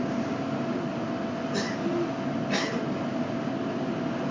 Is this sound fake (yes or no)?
no